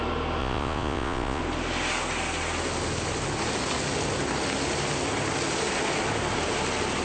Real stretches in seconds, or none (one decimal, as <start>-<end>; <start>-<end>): 0.0-0.4; 1.4-7.0